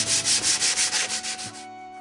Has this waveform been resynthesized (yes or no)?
no